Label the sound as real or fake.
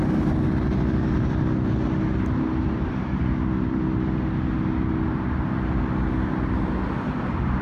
real